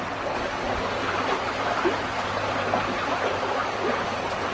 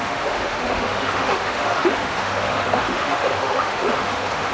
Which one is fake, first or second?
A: second